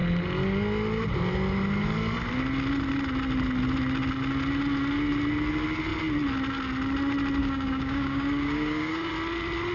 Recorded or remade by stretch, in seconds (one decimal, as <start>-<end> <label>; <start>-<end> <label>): 0.0-7.4 recorded; 7.4-9.1 remade; 9.1-9.7 recorded